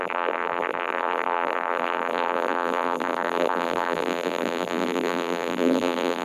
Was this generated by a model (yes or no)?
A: yes